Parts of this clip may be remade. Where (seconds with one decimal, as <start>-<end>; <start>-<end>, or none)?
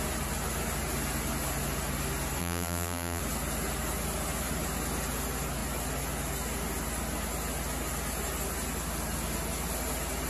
2.4-3.2